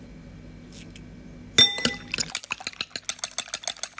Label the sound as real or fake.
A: real